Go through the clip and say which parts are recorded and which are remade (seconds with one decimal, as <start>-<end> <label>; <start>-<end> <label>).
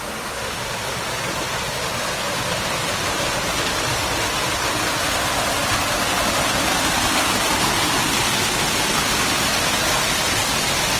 0.0-0.6 remade; 0.6-11.0 recorded